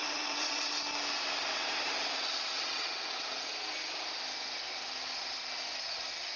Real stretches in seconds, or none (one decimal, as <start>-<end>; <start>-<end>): 0.7-1.5; 3.5-6.4